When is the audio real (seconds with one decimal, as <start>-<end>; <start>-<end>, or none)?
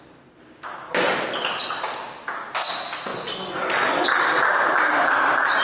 0.0-5.6